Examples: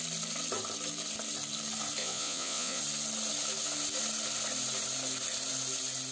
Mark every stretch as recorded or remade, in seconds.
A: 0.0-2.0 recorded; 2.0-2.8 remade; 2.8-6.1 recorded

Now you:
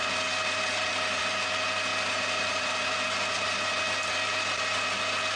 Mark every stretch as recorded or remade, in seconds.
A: 0.0-5.4 recorded

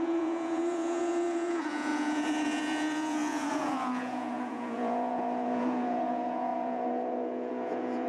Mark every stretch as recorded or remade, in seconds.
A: 0.0-8.1 remade